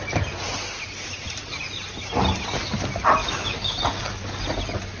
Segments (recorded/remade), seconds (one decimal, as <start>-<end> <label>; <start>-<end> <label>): 0.0-3.2 recorded; 3.2-3.8 remade; 3.8-5.0 recorded